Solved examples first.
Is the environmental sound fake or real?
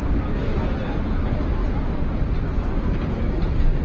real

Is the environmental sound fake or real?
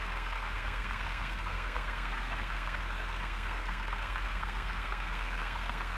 fake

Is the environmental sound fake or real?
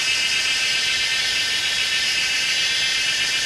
real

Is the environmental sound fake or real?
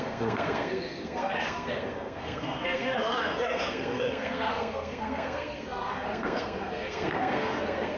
fake